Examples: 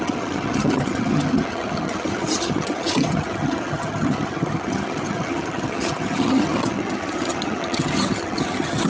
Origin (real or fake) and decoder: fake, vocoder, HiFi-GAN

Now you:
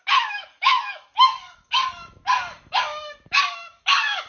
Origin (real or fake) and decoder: fake, codec, DAC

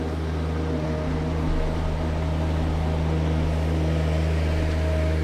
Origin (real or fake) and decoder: real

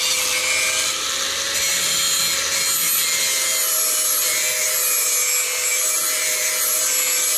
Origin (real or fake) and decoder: real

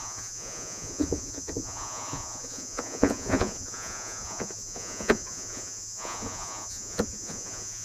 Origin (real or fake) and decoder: fake, vocoder, Vocos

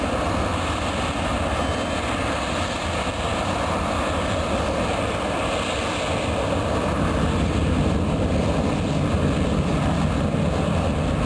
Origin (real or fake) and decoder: real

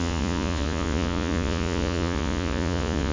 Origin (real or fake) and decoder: fake, vocoder, Vocos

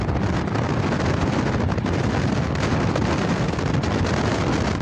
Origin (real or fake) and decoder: real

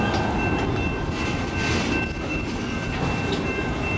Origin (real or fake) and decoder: real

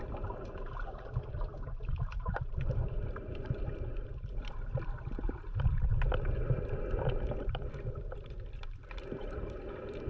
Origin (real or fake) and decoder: fake, vocoder, BigVGAN v2